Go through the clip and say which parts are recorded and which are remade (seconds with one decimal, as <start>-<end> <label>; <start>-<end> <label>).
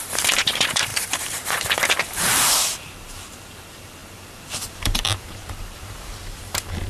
0.0-6.9 remade